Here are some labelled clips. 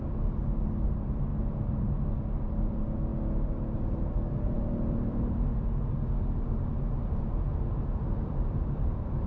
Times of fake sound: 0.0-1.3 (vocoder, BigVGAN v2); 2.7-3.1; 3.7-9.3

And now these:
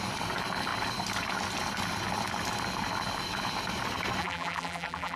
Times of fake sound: 4.2-5.2 (vocoder, BigVGAN v2)